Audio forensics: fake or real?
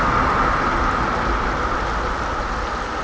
real